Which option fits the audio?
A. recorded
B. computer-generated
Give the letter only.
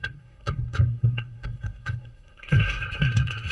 B